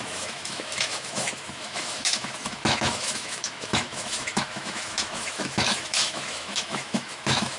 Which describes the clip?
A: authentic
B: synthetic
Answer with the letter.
B